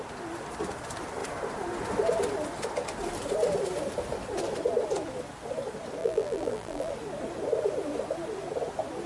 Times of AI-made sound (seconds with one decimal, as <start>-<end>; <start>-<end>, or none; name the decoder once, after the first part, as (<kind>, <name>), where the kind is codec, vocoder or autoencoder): 6.0-6.9 (vocoder, BigVGAN v2)